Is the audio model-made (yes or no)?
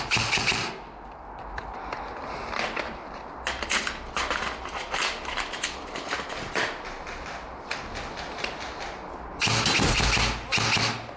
no